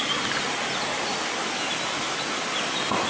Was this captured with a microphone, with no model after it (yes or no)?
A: yes